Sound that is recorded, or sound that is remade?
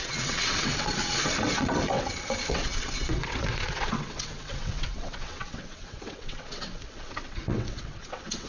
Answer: remade